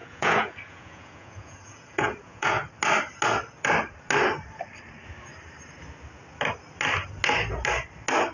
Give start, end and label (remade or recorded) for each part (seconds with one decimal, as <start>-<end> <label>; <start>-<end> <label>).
0.0-2.7 remade; 2.7-8.3 recorded